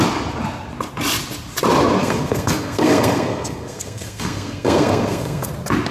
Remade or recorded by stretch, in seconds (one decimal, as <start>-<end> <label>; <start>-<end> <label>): 0.0-2.0 recorded; 2.0-5.5 remade; 5.5-5.9 recorded